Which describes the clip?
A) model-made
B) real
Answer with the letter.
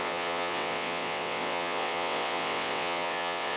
A